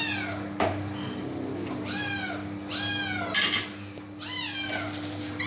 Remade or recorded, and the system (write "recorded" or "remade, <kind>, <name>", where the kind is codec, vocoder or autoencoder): recorded